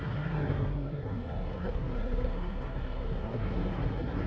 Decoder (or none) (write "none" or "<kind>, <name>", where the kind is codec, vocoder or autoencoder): codec, SNAC